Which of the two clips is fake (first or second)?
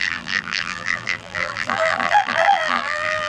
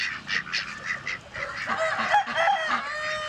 first